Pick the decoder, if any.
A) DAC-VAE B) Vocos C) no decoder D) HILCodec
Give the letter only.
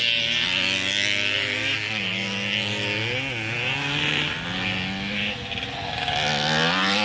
C